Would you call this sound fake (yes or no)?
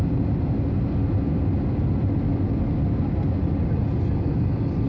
no